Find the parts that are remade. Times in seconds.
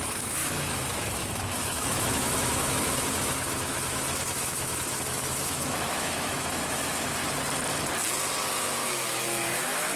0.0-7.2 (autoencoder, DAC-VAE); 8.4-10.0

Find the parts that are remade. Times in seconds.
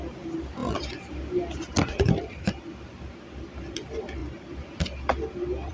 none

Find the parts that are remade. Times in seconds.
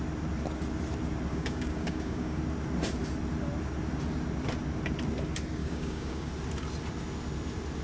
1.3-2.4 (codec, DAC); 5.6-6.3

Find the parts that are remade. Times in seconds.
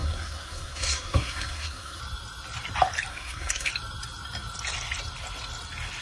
0.0-2.0 (codec, SNAC); 3.1-3.7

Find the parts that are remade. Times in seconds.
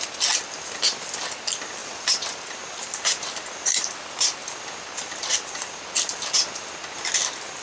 1.8-6.3 (vocoder, BigVGAN v2)